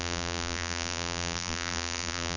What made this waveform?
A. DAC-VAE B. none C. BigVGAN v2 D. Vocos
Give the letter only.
C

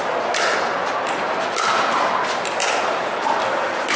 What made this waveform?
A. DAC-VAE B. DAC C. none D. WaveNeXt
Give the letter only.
C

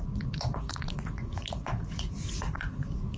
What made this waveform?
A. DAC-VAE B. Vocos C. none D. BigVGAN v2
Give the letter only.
B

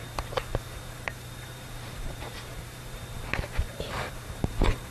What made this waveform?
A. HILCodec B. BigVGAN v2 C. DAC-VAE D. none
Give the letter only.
B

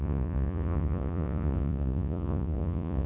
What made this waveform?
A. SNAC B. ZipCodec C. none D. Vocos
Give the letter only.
D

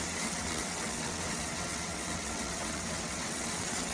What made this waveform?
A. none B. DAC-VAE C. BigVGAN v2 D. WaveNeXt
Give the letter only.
D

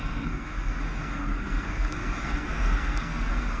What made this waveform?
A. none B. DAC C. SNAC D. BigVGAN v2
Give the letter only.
C